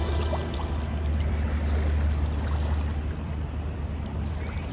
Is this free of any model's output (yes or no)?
yes